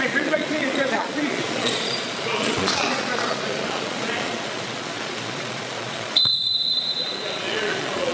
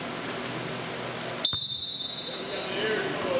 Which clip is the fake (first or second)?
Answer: first